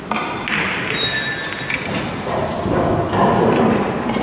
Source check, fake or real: fake